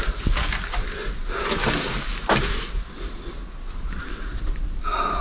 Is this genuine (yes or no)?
yes